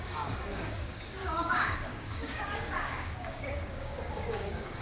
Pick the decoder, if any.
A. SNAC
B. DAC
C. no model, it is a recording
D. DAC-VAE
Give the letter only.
B